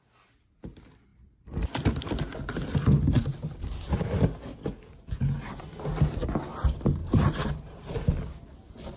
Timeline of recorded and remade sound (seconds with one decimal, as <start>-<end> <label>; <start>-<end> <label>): 0.0-7.0 recorded; 7.0-8.1 remade; 8.1-9.0 recorded